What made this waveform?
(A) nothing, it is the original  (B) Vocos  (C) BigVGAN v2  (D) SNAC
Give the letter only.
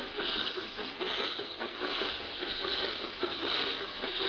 D